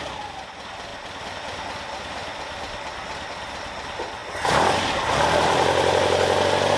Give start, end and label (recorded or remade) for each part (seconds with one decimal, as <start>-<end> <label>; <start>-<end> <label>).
0.0-6.8 recorded